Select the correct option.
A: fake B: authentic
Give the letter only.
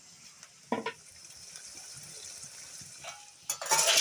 B